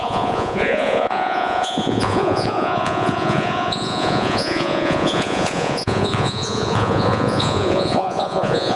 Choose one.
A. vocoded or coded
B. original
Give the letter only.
A